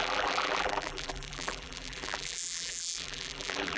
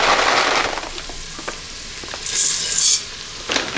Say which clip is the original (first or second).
second